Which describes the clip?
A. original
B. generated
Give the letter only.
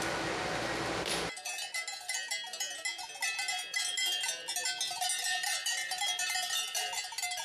A